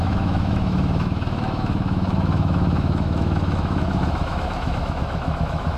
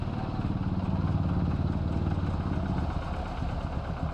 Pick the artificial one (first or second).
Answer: first